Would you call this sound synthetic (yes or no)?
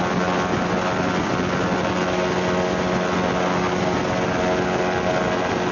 no